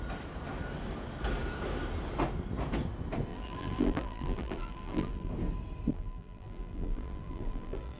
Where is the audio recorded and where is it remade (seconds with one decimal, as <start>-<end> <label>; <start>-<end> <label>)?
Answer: 0.0-3.3 recorded; 3.3-5.3 remade; 5.3-5.9 recorded; 5.9-8.0 remade